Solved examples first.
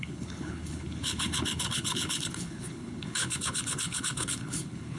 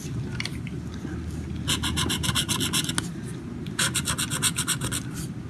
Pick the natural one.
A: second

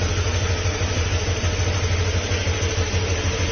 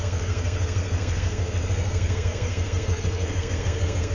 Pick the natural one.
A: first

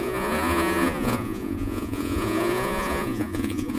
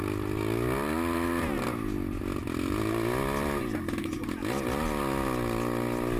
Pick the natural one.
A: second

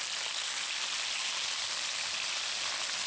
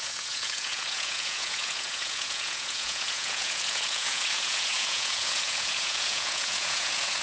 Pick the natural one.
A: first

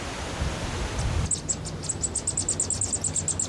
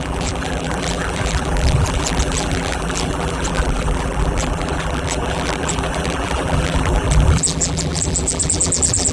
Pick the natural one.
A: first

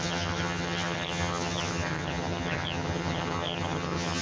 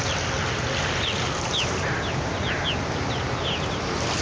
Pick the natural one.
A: second